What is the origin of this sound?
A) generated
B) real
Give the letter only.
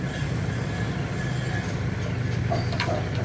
B